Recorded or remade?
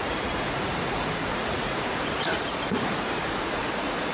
remade